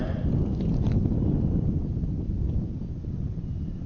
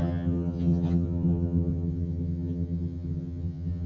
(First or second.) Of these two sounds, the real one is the first